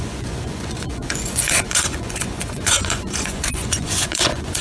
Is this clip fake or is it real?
fake